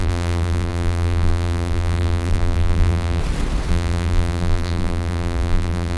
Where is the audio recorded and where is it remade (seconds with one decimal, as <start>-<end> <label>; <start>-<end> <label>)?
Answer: 0.0-3.2 remade; 3.2-3.7 recorded; 3.7-6.0 remade